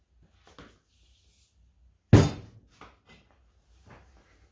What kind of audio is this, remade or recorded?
recorded